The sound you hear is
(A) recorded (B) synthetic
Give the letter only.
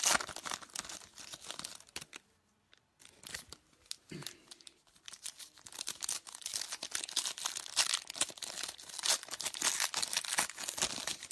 A